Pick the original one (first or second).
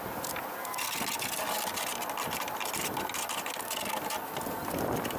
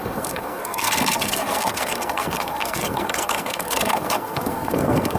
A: first